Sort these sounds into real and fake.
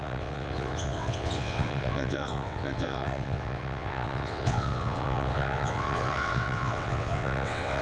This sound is fake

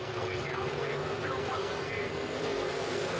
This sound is fake